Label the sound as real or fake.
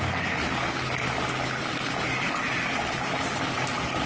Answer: fake